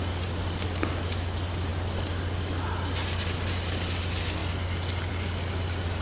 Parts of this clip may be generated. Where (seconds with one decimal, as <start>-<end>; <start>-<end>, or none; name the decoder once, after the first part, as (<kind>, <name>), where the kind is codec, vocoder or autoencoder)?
none